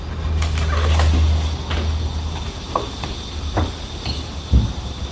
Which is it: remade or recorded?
recorded